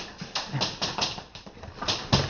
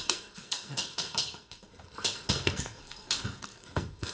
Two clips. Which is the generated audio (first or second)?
second